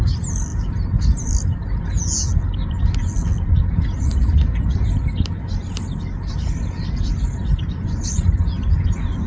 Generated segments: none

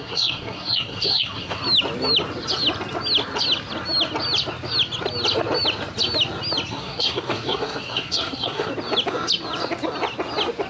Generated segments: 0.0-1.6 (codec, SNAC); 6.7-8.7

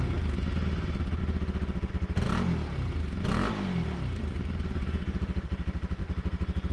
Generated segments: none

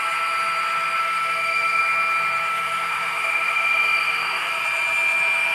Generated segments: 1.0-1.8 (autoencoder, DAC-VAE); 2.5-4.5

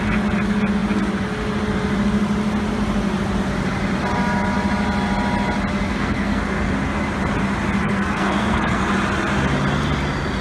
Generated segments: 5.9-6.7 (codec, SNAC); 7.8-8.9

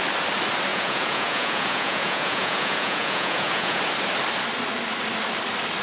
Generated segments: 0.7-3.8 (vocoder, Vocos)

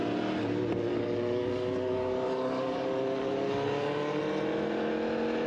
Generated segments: 0.9-4.2 (codec, DAC)